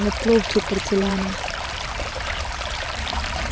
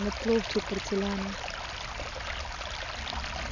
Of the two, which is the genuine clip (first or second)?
second